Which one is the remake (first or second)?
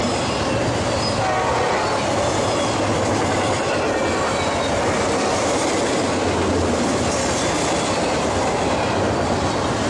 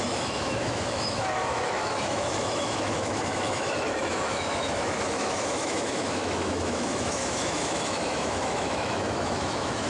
second